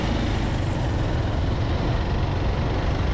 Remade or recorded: recorded